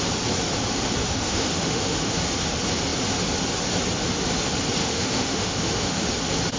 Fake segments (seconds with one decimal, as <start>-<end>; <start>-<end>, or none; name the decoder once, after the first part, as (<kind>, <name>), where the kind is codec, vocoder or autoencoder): 1.0-2.2 (autoencoder, DAC-VAE); 4.8-6.1